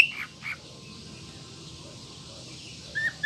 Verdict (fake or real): real